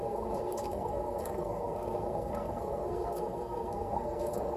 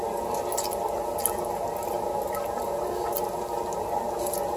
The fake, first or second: first